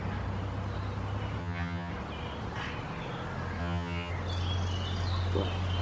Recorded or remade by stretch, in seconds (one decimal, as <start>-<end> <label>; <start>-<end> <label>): 0.0-1.4 recorded; 1.4-1.9 remade; 1.9-3.6 recorded; 3.6-4.1 remade; 4.1-5.8 recorded